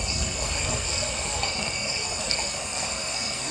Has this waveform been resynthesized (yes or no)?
yes